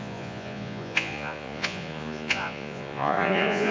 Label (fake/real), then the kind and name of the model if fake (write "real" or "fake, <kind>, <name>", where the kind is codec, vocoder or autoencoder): fake, vocoder, Vocos